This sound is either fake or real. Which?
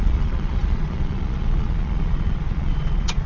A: fake